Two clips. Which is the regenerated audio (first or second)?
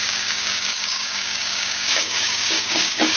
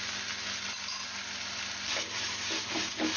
first